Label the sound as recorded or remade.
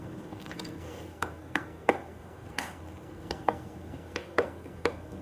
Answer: remade